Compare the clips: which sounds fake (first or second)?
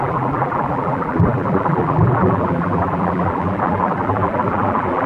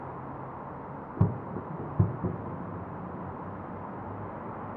first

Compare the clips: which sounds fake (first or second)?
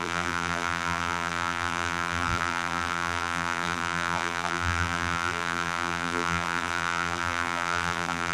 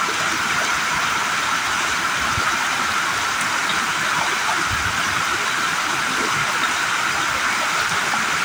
first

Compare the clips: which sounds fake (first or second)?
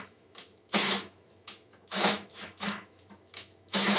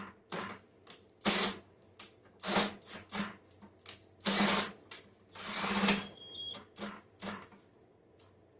first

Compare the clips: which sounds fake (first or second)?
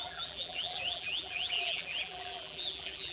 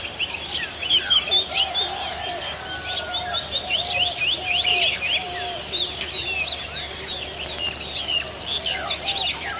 first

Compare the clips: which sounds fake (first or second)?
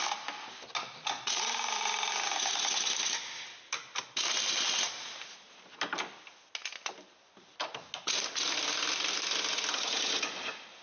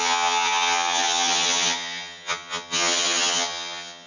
second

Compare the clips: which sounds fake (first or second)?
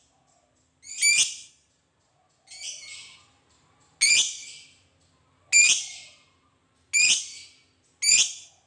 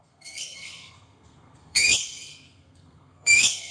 second